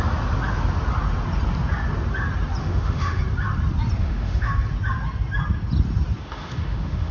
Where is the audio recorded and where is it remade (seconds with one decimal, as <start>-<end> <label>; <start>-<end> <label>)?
0.0-2.6 recorded; 2.6-3.2 remade; 3.2-4.0 recorded; 4.0-4.5 remade; 4.5-6.2 recorded; 6.2-7.1 remade